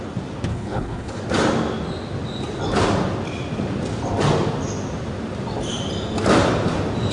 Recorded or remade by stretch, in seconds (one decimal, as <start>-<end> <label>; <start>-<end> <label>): 0.0-0.5 recorded; 0.5-1.2 remade; 1.2-7.1 recorded